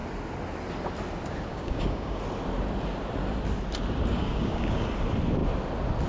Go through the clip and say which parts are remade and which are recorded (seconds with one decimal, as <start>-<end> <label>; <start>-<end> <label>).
0.0-1.5 recorded; 1.5-2.2 remade; 2.2-4.1 recorded; 4.1-4.8 remade; 4.8-6.1 recorded

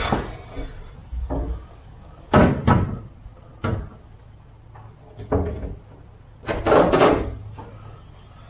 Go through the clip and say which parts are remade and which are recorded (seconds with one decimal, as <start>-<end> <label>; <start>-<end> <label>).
0.0-1.0 recorded; 1.0-2.5 remade; 2.5-8.5 recorded

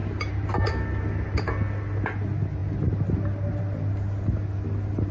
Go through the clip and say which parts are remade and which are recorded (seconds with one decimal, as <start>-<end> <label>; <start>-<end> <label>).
0.0-5.1 recorded

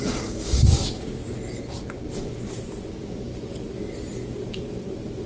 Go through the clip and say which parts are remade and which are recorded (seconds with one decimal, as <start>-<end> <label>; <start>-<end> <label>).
0.0-1.2 remade; 1.2-2.9 recorded; 2.9-3.3 remade; 3.3-5.3 recorded